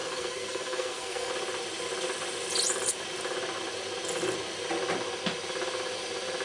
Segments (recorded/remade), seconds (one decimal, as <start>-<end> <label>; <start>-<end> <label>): 0.0-1.3 remade; 1.3-6.4 recorded